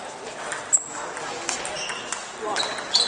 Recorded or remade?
recorded